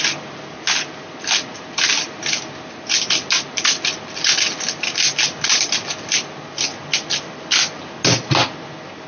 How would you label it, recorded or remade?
recorded